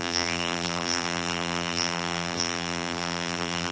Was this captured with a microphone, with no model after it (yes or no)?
no